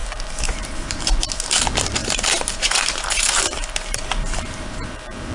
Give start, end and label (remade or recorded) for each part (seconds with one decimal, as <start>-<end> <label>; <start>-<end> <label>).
0.0-1.6 remade; 1.6-2.0 recorded; 2.0-5.3 remade

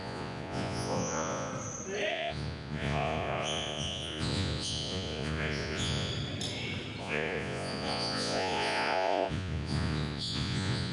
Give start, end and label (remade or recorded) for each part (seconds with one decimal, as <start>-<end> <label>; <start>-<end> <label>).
0.0-1.5 remade; 1.5-2.1 recorded; 2.1-6.1 remade; 6.1-7.0 recorded; 7.0-10.9 remade

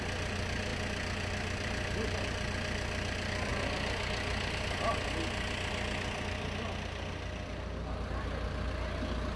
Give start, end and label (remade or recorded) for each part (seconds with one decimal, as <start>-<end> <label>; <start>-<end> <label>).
0.0-9.4 recorded